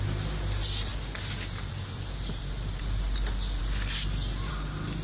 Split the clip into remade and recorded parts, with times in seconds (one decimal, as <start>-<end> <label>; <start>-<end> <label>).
0.0-5.0 recorded